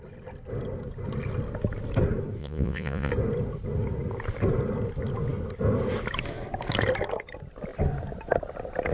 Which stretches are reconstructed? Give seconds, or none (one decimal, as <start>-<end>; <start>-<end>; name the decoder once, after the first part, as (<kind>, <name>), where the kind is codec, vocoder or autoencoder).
2.4-3.1 (vocoder, Vocos)